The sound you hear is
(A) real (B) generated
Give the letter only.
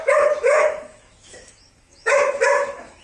B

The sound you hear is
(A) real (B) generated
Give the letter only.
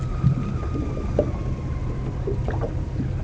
A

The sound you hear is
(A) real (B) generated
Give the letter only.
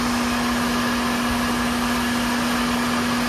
A